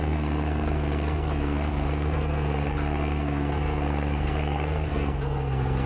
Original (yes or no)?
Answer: no